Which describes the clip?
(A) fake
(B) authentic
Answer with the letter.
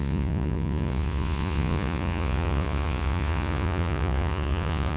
A